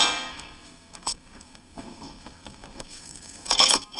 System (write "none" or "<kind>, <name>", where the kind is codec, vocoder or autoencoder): codec, SNAC